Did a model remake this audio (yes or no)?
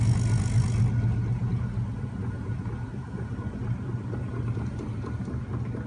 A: no